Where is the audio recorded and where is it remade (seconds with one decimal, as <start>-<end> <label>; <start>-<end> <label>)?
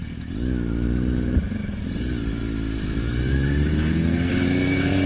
0.0-3.7 recorded; 3.7-4.3 remade; 4.3-5.1 recorded